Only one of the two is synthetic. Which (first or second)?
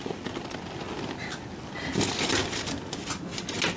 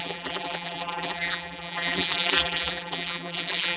second